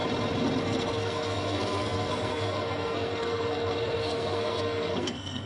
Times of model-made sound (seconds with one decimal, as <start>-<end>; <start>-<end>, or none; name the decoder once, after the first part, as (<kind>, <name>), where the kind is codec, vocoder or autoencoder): 0.6-5.5 (codec, SNAC)